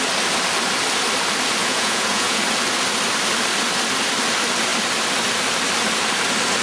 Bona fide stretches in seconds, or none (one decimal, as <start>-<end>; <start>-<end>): 0.0-1.6; 2.4-6.6